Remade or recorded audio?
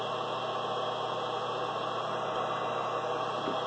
recorded